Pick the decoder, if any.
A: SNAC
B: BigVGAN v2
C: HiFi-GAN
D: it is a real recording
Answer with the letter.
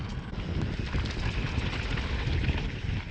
D